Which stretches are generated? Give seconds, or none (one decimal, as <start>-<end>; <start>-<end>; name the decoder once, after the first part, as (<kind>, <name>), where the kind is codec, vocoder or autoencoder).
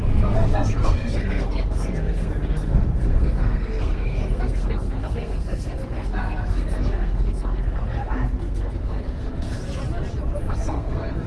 0.0-9.6 (codec, SNAC); 10.4-11.3